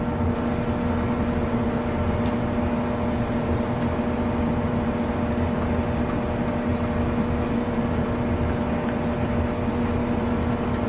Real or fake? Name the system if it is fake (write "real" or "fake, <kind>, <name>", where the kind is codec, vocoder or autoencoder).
real